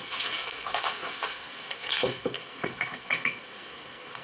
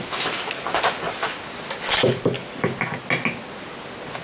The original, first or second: second